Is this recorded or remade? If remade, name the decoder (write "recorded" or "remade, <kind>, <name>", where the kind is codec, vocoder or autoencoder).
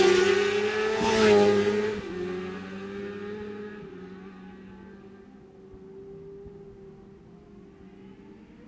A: recorded